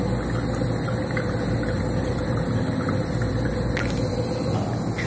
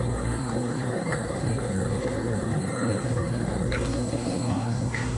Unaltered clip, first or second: first